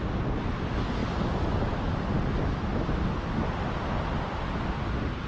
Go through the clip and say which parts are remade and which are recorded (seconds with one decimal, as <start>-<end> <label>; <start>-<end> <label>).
0.0-5.3 recorded